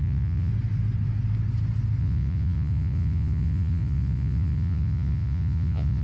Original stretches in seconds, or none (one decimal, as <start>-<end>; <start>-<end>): 0.5-2.0